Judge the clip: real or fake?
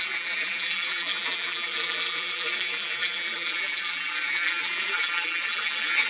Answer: fake